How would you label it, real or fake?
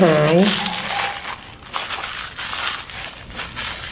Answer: real